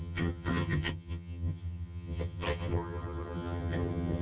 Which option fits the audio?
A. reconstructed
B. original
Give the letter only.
A